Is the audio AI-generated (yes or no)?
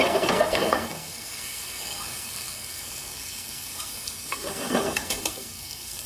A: yes